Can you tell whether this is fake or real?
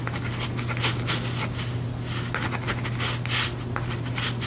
real